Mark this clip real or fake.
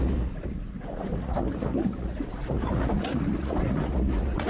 fake